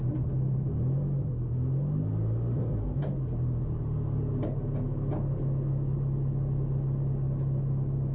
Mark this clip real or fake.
real